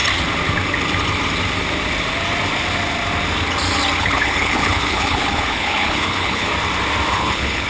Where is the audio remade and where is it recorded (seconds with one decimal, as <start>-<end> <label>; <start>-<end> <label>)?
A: 0.0-4.0 recorded; 4.0-6.5 remade; 6.5-7.1 recorded; 7.1-7.7 remade